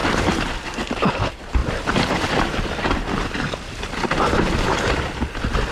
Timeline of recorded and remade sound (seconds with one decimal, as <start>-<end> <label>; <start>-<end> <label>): 0.0-5.7 remade